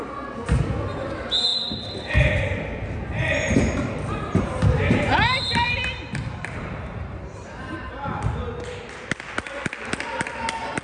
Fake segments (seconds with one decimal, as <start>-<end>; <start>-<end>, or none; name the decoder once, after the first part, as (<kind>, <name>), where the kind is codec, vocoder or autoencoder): 3.0-7.9 (vocoder, BigVGAN v2)